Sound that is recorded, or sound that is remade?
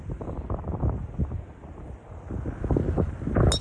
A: recorded